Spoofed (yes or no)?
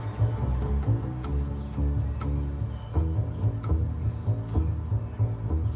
no